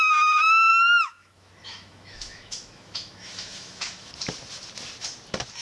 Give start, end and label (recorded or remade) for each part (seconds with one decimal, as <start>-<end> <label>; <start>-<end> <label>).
0.0-0.7 recorded; 0.7-4.1 remade; 4.1-5.6 recorded